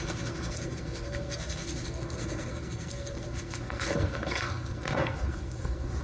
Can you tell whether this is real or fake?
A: fake